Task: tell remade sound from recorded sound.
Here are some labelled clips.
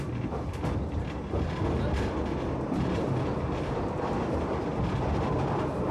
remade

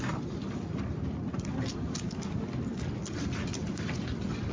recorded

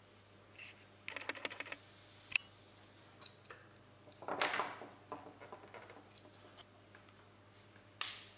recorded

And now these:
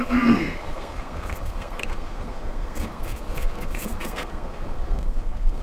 remade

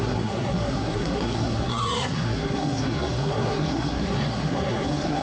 remade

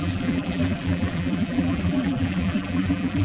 remade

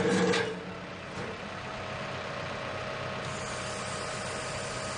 recorded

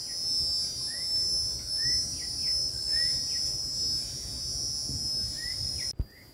recorded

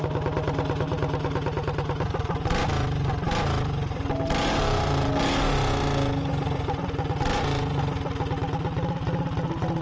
recorded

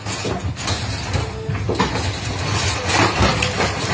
recorded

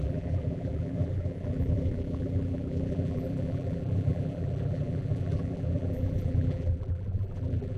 remade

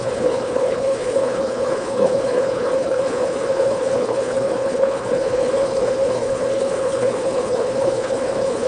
remade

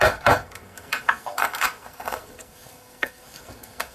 remade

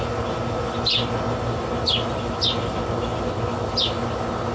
recorded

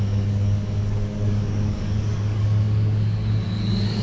remade